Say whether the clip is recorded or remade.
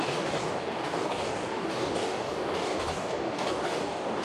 remade